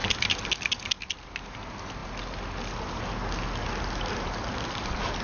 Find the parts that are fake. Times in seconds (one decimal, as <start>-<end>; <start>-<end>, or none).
none

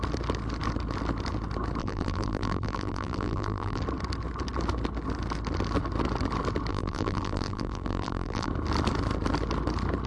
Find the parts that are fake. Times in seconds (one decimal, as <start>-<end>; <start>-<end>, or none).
1.8-3.8; 6.7-8.5

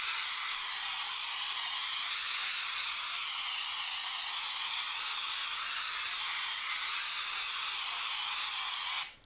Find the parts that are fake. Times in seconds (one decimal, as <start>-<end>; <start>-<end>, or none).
none

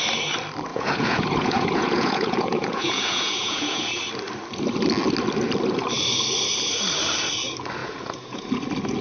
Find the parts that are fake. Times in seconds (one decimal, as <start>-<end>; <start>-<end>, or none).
0.7-4.0; 7.8-8.5

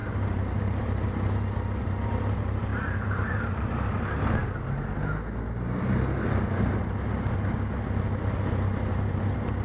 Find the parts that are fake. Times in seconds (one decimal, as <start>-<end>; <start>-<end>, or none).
0.0-0.8; 2.7-3.7

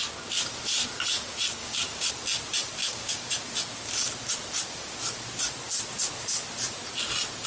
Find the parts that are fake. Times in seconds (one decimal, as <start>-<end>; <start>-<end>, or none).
1.6-2.1; 2.8-3.3

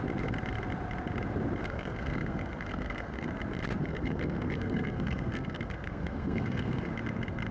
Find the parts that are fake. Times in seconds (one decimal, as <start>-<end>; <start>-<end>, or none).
1.6-3.3; 3.8-6.9